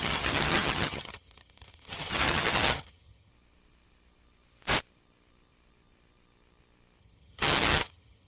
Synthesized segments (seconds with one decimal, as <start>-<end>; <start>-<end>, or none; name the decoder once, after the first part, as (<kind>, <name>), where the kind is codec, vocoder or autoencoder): 0.0-3.3 (vocoder, HiFi-GAN); 7.0-8.3